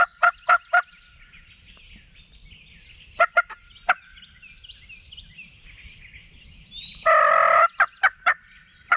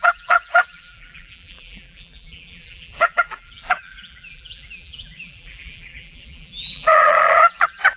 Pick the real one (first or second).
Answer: first